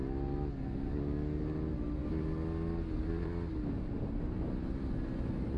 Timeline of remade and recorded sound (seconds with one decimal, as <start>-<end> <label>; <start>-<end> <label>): 0.0-5.6 recorded